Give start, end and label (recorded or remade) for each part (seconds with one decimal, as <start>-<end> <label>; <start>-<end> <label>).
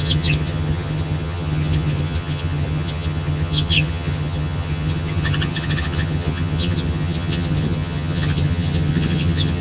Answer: 0.0-9.6 remade